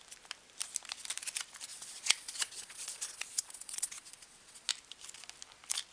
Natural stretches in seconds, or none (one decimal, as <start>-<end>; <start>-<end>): 0.0-1.7; 4.7-5.9